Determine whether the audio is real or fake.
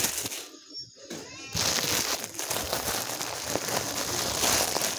real